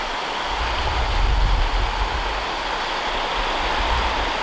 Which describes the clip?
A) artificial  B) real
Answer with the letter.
B